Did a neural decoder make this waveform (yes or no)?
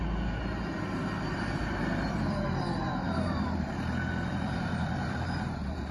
yes